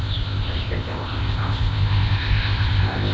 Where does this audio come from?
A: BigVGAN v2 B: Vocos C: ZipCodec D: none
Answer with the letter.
C